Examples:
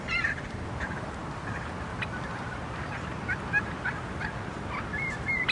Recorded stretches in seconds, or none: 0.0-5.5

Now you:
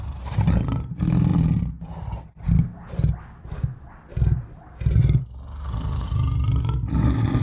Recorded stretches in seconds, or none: 0.0-7.4

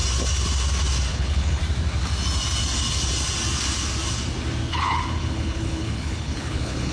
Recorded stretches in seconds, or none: 0.0-1.1; 1.6-4.7

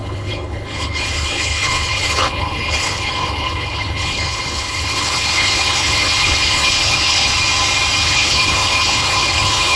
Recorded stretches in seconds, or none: 7.3-8.0

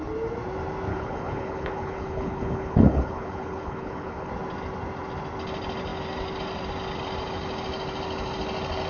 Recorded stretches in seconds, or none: 0.0-0.9; 4.3-8.9

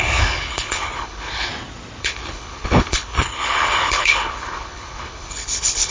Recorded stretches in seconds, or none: 1.5-2.0

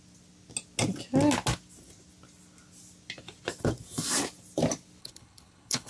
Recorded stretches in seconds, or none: 0.0-5.0

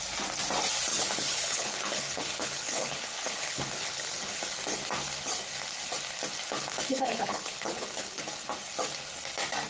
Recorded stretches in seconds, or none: 0.0-0.9; 4.4-6.7; 8.2-9.7